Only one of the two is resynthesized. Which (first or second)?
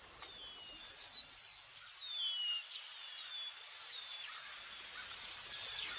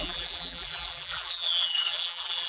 second